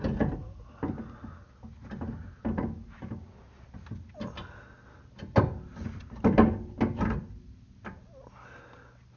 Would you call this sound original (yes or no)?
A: yes